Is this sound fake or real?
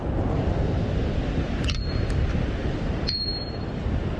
real